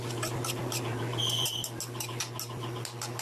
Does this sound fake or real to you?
real